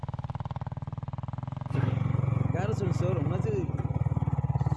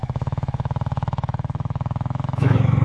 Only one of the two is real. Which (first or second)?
first